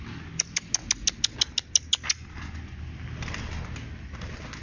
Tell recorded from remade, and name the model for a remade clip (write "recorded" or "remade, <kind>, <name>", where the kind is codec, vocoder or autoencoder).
recorded